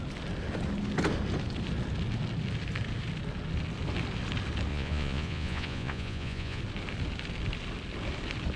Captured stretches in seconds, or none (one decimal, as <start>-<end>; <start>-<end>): 0.0-4.7; 6.6-8.6